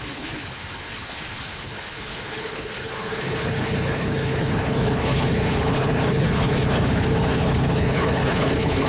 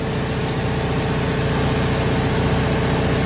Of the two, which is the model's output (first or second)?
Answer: first